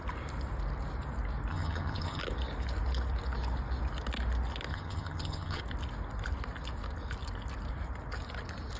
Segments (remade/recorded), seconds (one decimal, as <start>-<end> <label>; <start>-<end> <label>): 0.0-1.5 recorded; 1.5-2.2 remade; 2.2-4.7 recorded; 4.7-5.6 remade; 5.6-8.8 recorded